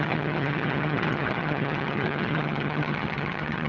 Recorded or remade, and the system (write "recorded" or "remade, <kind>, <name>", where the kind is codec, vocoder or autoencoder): remade, vocoder, HiFi-GAN